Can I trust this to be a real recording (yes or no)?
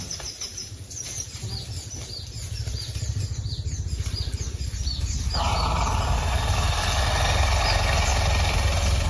yes